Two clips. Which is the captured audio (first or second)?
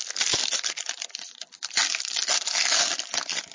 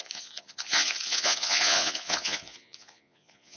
first